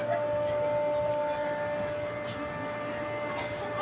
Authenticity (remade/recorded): recorded